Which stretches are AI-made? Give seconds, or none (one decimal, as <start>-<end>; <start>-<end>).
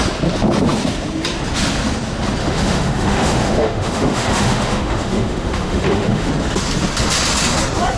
2.4-6.3